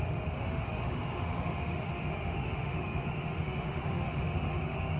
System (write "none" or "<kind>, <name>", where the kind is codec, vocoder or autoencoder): autoencoder, DAC-VAE